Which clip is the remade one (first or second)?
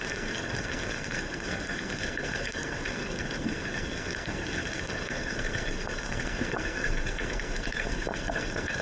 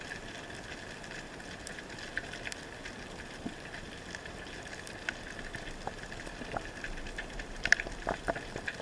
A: first